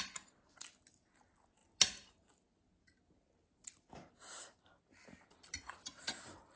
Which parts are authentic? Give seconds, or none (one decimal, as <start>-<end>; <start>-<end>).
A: 0.0-6.6